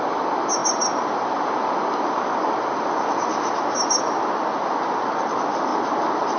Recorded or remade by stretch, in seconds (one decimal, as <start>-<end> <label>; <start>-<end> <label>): 0.0-6.4 recorded